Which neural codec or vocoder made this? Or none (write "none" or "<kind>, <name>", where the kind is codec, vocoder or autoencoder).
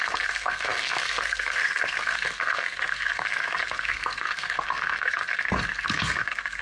codec, SNAC